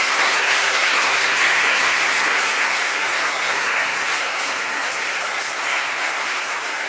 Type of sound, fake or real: fake